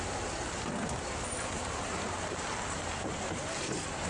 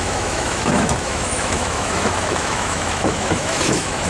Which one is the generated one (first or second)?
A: second